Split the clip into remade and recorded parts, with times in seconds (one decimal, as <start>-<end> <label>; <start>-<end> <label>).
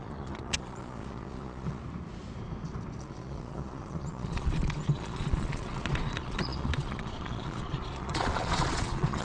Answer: 0.0-1.8 remade; 1.8-3.0 recorded; 3.0-9.2 remade